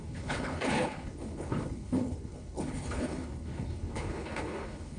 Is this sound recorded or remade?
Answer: remade